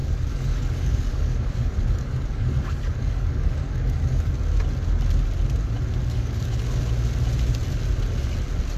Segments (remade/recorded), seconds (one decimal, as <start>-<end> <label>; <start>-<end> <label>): 0.0-4.3 remade; 4.3-6.0 recorded; 6.0-6.6 remade; 6.6-8.8 recorded